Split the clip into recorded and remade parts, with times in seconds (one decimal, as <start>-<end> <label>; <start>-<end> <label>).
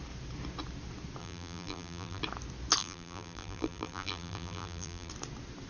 0.0-1.2 recorded; 1.2-2.2 remade; 2.2-2.8 recorded; 2.8-5.1 remade; 5.1-5.7 recorded